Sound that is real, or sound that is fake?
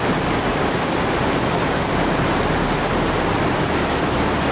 real